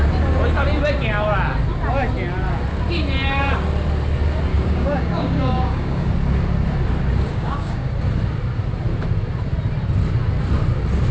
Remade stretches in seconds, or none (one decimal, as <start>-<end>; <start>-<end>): 4.5-6.1; 7.3-7.9